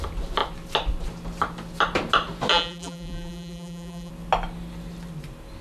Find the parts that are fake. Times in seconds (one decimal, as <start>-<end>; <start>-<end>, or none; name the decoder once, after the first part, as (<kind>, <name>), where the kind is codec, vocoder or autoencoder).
2.5-4.1 (vocoder, BigVGAN v2)